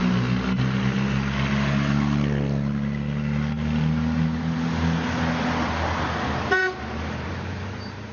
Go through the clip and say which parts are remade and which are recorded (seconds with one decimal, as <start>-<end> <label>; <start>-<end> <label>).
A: 0.0-6.6 recorded; 6.6-8.1 remade